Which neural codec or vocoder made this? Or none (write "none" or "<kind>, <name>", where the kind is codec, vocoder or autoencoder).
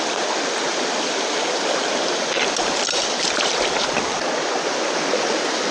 none